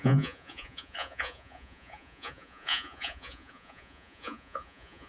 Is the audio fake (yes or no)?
yes